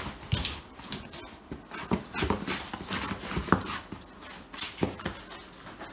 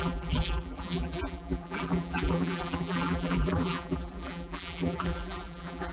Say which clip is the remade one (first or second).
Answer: second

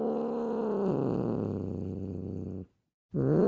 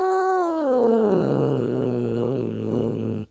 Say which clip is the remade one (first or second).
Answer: second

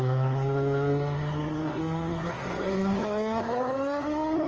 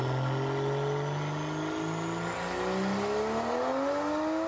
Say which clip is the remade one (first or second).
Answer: first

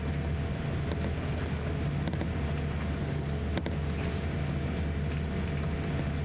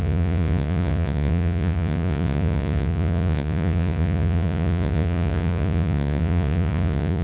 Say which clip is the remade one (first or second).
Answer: second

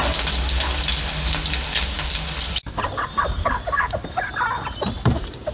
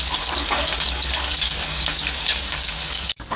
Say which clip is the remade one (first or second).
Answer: second